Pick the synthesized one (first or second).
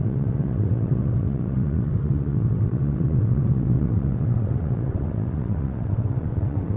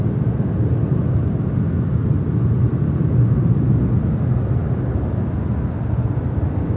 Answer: first